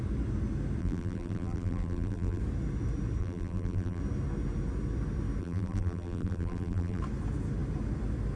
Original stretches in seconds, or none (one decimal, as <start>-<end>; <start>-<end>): 0.0-0.8; 2.4-3.2; 4.0-5.4; 7.0-8.4